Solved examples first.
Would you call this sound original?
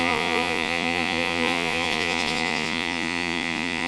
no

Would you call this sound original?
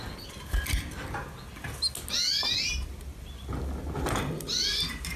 yes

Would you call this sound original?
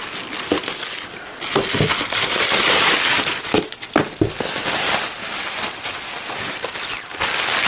yes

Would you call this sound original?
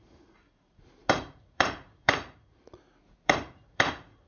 no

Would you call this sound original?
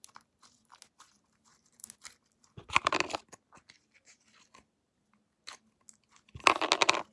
yes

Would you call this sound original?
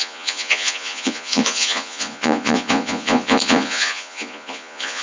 no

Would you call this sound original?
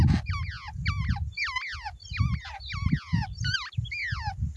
yes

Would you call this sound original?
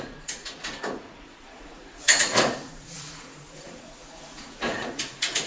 no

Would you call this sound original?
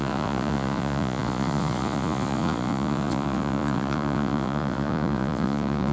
no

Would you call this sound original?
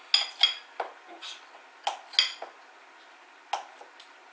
yes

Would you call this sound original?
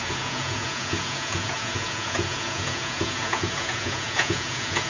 no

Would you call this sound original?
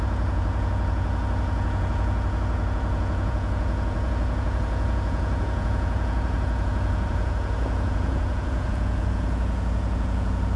no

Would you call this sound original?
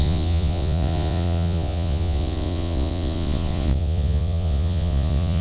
no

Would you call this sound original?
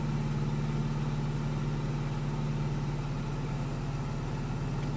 yes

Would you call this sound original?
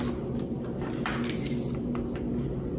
yes